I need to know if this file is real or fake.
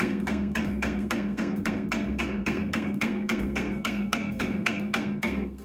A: fake